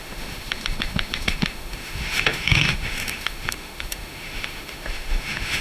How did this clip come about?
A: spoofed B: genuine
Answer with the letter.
A